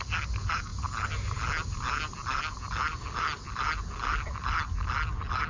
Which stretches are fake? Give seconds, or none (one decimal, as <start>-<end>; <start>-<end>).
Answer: none